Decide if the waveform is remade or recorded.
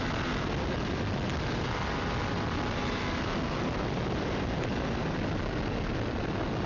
remade